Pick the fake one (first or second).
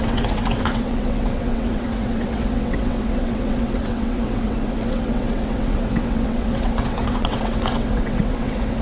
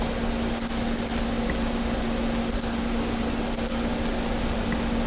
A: first